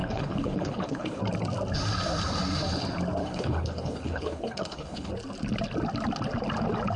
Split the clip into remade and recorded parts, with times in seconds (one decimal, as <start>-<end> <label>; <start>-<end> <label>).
0.0-1.2 remade; 1.2-3.2 recorded; 3.2-5.1 remade; 5.1-7.0 recorded